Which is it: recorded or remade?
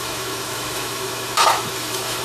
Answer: remade